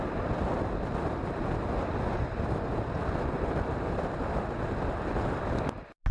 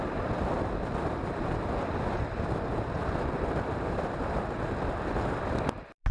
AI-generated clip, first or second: second